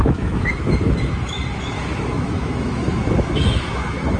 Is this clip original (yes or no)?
no